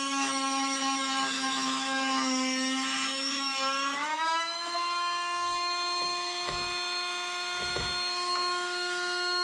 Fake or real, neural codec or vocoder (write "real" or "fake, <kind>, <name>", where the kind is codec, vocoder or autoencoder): fake, autoencoder, DAC-VAE